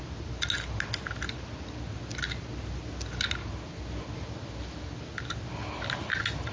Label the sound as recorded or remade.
recorded